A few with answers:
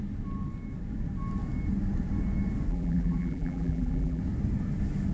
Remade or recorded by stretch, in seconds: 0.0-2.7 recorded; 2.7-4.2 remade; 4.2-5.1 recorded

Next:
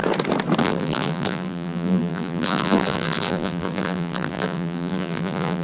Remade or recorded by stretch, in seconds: 0.0-0.6 recorded; 0.6-5.6 remade

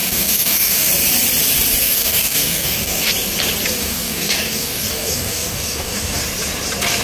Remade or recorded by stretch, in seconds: 0.0-0.9 remade; 0.9-1.8 recorded; 1.8-3.1 remade; 3.1-3.8 recorded; 3.8-6.2 remade; 6.2-7.0 recorded

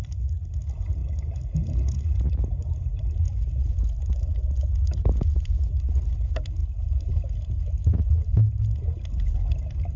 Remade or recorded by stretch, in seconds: 0.0-10.0 recorded